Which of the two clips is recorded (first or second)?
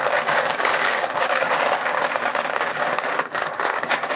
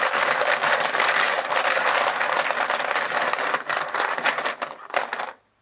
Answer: second